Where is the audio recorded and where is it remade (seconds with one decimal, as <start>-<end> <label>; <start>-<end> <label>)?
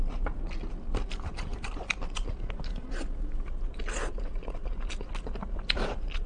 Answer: 0.0-6.3 recorded